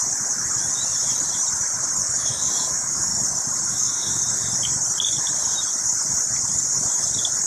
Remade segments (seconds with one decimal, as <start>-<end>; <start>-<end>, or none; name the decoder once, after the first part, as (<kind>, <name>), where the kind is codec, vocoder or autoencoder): 2.0-3.1 (codec, DAC); 3.7-4.2